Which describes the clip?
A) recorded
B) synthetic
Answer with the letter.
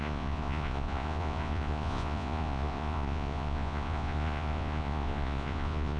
B